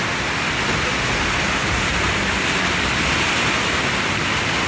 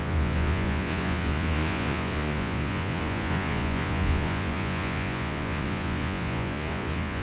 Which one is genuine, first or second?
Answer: first